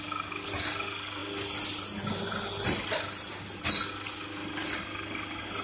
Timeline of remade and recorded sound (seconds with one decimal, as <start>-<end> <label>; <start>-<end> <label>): 0.0-5.6 recorded